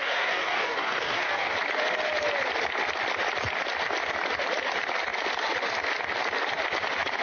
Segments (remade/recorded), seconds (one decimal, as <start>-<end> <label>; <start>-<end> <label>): 0.0-1.5 remade; 1.5-7.2 recorded